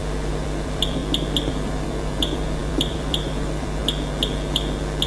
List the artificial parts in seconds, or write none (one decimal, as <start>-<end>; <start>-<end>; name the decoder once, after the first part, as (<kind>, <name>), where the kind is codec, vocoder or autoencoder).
0.0-1.0 (vocoder, BigVGAN v2); 1.5-3.8